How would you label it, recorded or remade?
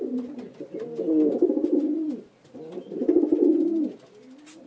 recorded